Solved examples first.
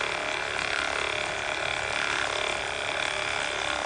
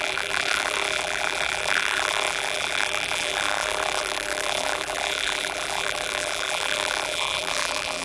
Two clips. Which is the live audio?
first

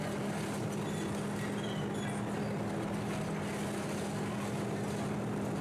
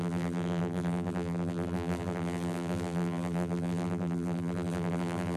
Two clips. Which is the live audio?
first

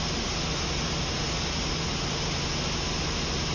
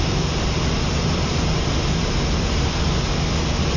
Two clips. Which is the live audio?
first